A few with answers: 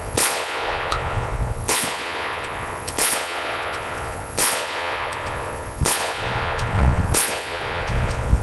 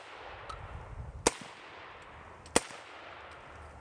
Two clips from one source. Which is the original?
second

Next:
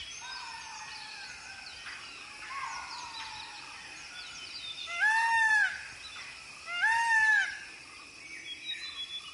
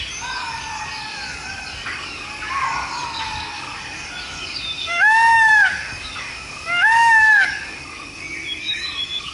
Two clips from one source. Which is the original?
first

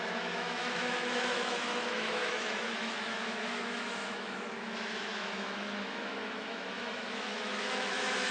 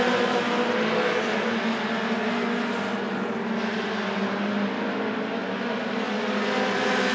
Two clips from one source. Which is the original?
second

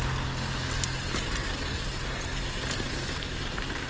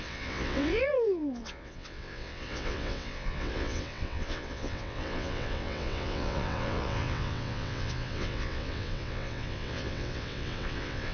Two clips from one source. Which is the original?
first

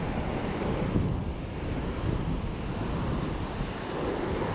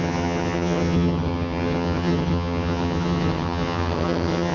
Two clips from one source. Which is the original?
first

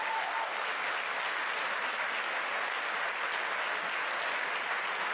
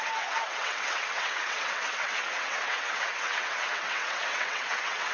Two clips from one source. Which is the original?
first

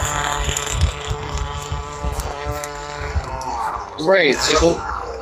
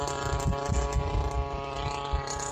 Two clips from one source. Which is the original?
second